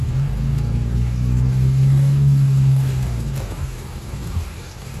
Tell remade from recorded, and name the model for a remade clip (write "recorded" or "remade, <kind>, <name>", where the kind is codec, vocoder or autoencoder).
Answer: remade, codec, DAC